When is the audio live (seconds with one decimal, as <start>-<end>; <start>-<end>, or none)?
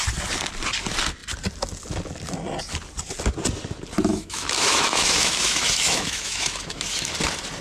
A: 0.0-4.1; 7.1-7.6